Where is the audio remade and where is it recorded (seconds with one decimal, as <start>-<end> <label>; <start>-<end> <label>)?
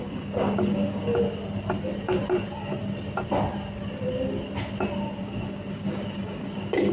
0.0-1.1 remade; 1.1-5.2 recorded; 5.2-6.9 remade